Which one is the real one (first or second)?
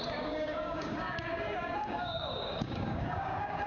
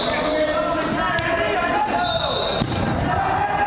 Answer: second